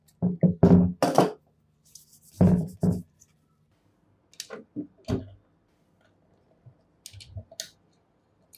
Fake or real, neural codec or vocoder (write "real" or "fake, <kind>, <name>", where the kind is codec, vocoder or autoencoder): real